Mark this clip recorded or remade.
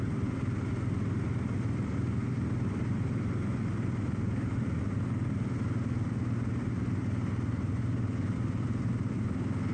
recorded